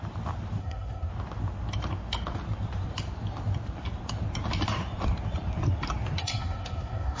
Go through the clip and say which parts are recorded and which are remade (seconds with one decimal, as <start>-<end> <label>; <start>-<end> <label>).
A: 0.0-0.6 recorded; 0.6-1.1 remade; 1.1-6.2 recorded; 6.2-7.2 remade